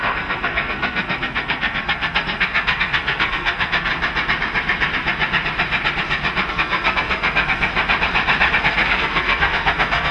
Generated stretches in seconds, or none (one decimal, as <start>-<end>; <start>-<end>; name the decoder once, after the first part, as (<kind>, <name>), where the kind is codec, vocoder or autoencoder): 0.0-3.9 (codec, SNAC); 6.5-7.7; 8.6-10.1